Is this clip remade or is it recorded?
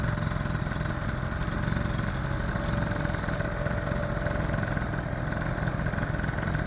recorded